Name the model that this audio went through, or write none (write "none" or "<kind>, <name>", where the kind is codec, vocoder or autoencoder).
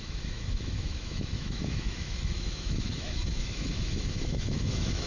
autoencoder, DAC-VAE